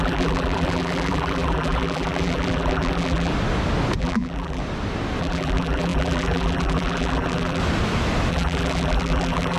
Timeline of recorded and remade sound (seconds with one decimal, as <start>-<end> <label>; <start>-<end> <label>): 0.0-3.3 remade; 3.3-4.0 recorded; 4.0-4.6 remade; 4.6-5.2 recorded; 5.2-7.6 remade; 7.6-8.3 recorded; 8.3-9.6 remade